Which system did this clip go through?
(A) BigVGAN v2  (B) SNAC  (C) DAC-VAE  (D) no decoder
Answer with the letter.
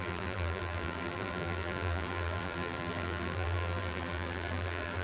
A